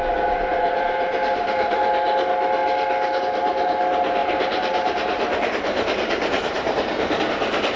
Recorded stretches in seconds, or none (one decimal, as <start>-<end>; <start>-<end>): 0.0-0.5; 1.8-4.2; 7.2-7.8